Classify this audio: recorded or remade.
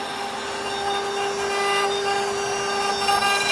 recorded